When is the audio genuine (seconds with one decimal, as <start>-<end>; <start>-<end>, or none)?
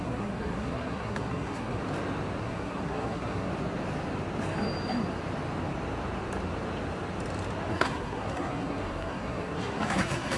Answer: 1.8-2.4; 3.5-7.7